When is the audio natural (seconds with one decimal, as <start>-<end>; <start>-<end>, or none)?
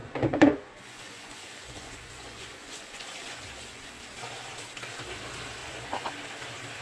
3.9-5.6; 6.1-6.8